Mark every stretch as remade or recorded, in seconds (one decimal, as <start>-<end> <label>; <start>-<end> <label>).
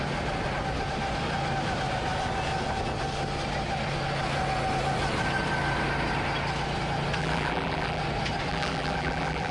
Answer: 0.0-7.2 recorded; 7.2-8.0 remade; 8.0-8.5 recorded; 8.5-9.5 remade